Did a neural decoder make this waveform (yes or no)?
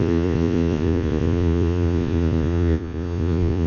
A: yes